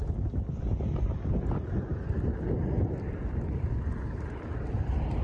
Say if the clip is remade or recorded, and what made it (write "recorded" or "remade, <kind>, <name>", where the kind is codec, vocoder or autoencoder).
recorded